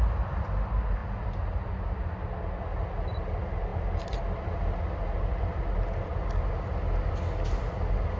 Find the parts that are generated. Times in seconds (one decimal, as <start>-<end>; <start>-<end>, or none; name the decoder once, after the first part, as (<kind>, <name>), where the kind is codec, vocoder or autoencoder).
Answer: none

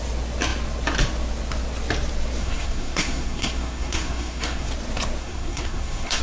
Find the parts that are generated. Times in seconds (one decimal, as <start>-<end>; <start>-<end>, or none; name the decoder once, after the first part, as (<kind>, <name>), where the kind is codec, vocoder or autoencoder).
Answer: 2.4-4.7 (codec, SNAC); 5.2-6.2

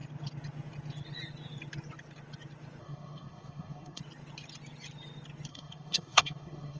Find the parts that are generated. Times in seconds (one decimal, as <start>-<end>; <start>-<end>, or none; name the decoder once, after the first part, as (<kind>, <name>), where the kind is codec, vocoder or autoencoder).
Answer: 2.8-4.0 (codec, SNAC); 5.5-6.8

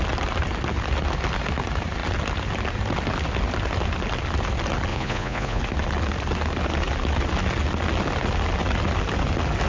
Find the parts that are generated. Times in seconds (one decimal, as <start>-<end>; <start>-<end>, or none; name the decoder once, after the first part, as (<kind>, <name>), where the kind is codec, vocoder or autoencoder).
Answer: 4.9-5.6 (vocoder, Vocos)

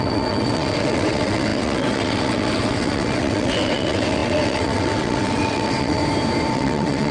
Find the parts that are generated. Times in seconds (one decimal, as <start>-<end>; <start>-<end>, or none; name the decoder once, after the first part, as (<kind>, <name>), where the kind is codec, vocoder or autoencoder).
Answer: 0.0-6.0 (vocoder, WaveNeXt); 6.5-7.1

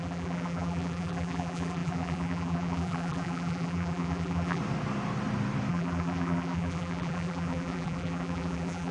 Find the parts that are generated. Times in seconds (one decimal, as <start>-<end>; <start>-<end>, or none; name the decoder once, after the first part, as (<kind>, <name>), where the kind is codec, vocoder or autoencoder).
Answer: 0.0-4.6 (vocoder, BigVGAN v2); 5.7-8.9